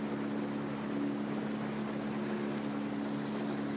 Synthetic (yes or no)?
no